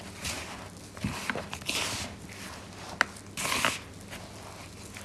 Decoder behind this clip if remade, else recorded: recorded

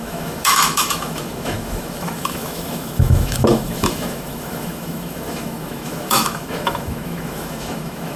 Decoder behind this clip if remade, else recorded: remade, autoencoder, DAC-VAE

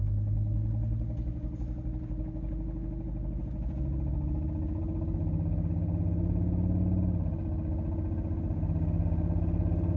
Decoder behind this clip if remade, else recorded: recorded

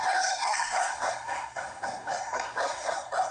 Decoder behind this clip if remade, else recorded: remade, codec, SNAC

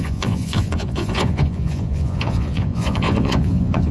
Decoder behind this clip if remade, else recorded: remade, vocoder, Vocos